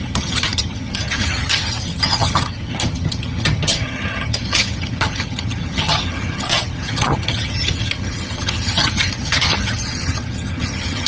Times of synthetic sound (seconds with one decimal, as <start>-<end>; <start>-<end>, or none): 0.0-11.1